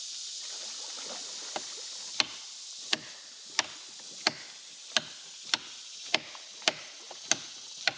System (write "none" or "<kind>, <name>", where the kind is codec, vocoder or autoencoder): none